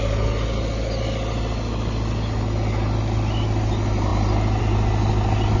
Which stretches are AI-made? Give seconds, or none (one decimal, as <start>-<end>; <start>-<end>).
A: none